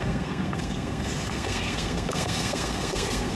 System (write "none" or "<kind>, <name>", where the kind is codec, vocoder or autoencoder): codec, SNAC